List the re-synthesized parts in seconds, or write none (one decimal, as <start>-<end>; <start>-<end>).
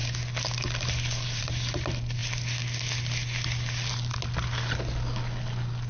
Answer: none